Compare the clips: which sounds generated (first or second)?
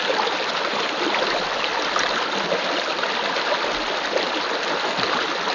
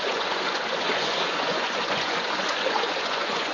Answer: second